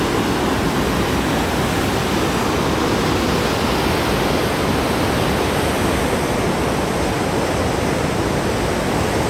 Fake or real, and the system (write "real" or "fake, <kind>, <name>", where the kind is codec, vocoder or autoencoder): real